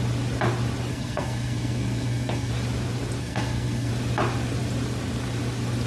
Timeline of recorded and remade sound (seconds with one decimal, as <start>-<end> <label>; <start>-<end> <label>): 0.0-0.9 recorded; 0.9-2.5 remade; 2.5-3.2 recorded; 3.2-3.9 remade; 3.9-5.9 recorded